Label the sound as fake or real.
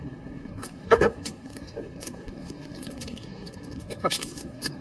fake